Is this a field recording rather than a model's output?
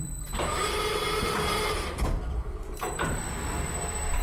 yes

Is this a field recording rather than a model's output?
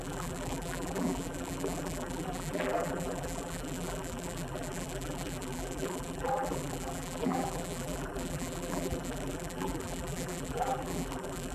no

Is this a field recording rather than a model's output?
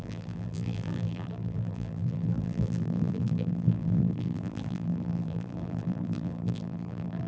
no